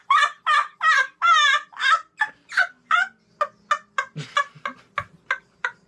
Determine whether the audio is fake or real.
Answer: real